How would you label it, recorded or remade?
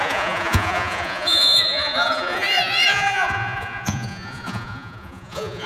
remade